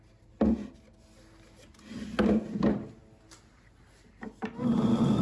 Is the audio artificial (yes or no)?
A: no